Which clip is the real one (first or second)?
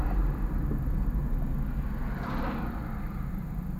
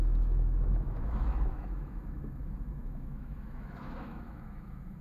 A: first